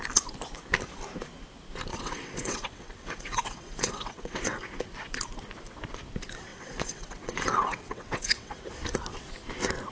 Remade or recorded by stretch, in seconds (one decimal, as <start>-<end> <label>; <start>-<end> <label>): 0.0-1.9 recorded; 1.9-4.6 remade; 4.6-6.5 recorded; 6.5-8.5 remade; 8.5-9.9 recorded